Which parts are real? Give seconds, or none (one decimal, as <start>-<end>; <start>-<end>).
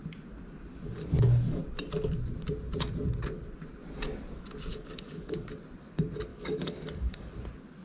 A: 0.0-0.7; 1.6-4.7; 5.5-6.3; 7.3-7.8